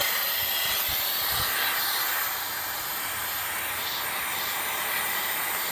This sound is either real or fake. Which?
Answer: real